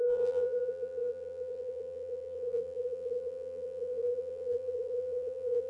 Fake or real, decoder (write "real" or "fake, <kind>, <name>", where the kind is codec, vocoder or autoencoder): fake, vocoder, BigVGAN v2